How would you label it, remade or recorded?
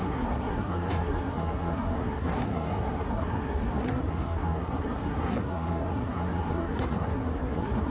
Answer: remade